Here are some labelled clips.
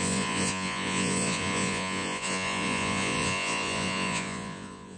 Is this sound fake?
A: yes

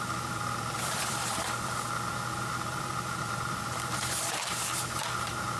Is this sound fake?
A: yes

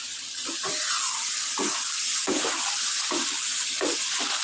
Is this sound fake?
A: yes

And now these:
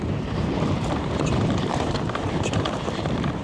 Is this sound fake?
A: yes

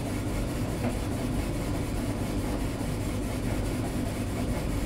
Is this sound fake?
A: no